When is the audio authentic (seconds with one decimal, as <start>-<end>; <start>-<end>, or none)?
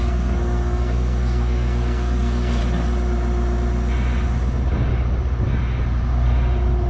2.6-6.9